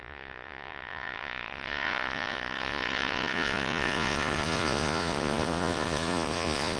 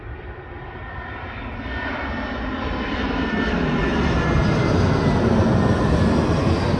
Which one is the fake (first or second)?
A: first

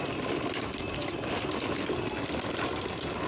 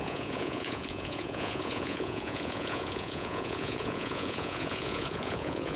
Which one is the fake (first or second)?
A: second